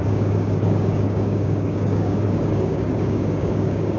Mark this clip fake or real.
fake